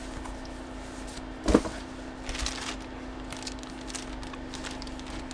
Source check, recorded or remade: recorded